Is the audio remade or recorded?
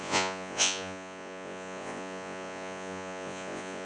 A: remade